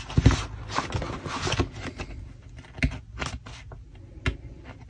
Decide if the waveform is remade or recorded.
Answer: recorded